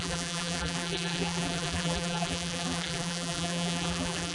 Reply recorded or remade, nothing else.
remade